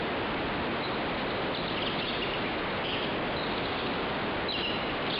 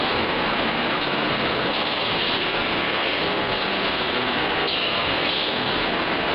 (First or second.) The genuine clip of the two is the first